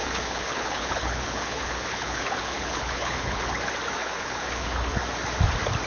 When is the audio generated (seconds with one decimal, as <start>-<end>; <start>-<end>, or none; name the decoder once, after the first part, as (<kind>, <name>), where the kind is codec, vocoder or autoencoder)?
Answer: 0.0-3.5 (codec, HILCodec); 4.0-5.0